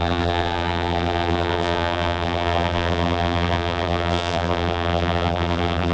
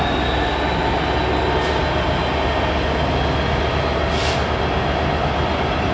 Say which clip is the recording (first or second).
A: second